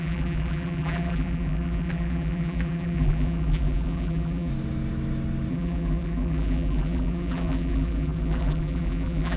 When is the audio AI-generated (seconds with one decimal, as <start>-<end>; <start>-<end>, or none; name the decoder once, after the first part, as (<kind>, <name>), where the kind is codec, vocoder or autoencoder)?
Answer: 0.0-4.5 (vocoder, BigVGAN v2); 5.5-9.4